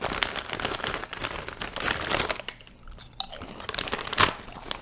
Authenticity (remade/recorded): recorded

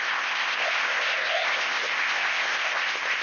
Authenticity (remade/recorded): remade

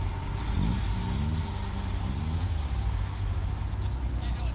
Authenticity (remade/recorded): recorded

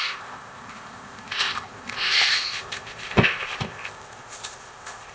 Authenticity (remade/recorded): remade